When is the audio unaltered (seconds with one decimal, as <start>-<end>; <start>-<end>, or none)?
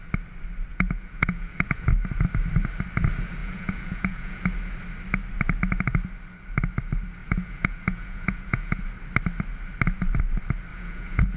0.0-0.7; 1.9-3.4; 4.4-7.2; 8.8-10.7